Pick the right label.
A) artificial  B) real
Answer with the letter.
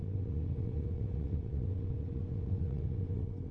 A